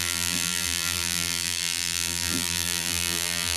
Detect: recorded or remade remade